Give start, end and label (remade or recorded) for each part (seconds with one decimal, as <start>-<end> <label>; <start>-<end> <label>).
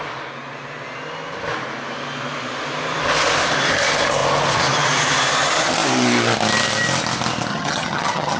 0.0-7.5 recorded; 7.5-8.4 remade